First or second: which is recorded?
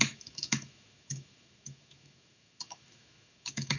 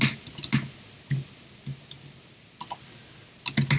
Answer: second